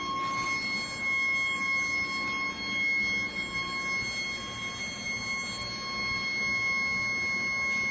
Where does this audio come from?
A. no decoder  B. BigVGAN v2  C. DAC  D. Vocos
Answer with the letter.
A